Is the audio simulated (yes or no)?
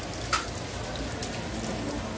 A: no